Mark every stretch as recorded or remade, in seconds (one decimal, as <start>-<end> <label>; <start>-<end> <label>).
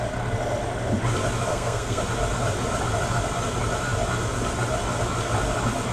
0.0-1.5 recorded; 1.5-2.0 remade; 2.0-5.9 recorded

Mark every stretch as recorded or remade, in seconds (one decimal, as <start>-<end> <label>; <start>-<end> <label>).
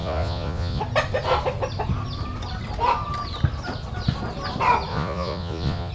0.0-0.8 remade; 0.8-4.9 recorded; 4.9-5.9 remade